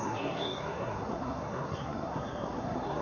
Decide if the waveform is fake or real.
fake